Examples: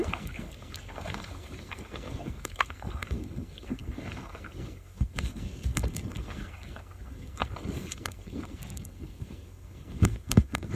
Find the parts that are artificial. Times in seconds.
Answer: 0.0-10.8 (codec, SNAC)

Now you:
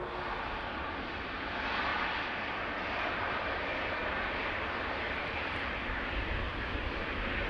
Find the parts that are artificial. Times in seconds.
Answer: 1.9-2.5 (vocoder, BigVGAN v2); 4.0-5.6; 6.5-7.0

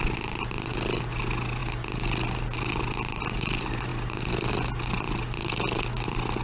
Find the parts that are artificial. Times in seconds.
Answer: none

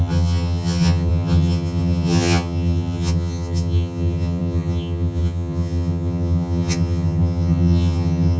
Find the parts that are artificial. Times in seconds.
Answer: 0.0-8.4 (vocoder, HiFi-GAN)

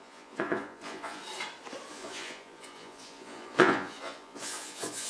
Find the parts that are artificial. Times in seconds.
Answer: 0.0-1.2 (vocoder, Vocos); 1.9-5.1